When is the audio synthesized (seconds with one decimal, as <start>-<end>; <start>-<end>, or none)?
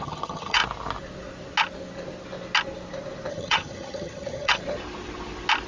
0.0-0.6; 3.3-4.6